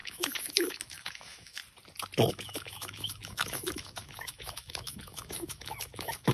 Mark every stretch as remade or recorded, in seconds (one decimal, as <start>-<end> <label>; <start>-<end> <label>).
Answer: 0.0-1.6 remade; 1.6-2.3 recorded; 2.3-6.3 remade